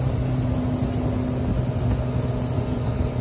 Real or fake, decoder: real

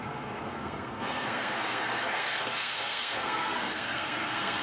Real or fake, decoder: fake, codec, SNAC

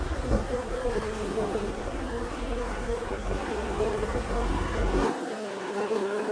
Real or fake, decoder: fake, codec, SNAC